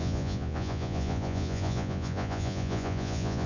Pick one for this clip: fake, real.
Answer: fake